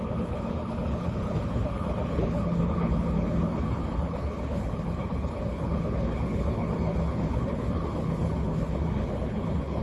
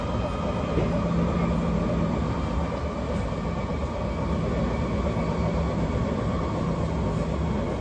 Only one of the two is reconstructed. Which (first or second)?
first